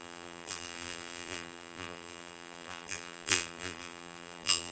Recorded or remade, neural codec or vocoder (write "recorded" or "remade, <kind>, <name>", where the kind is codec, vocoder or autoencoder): remade, vocoder, BigVGAN v2